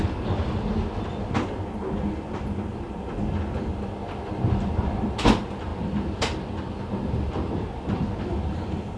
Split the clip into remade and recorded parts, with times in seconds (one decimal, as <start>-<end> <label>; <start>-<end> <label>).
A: 0.0-9.0 recorded